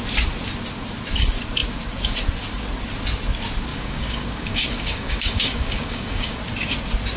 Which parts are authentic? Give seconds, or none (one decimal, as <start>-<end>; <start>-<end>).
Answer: 0.0-3.7; 6.4-7.2